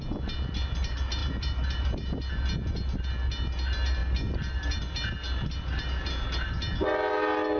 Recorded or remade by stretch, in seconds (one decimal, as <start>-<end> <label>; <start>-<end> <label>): 0.0-1.2 recorded; 1.2-2.2 remade; 2.2-4.0 recorded; 4.0-4.8 remade; 4.8-7.6 recorded